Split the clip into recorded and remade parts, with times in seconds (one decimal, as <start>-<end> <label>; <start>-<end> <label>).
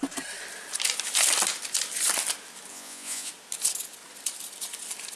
0.0-2.7 recorded; 2.7-3.3 remade; 3.3-5.2 recorded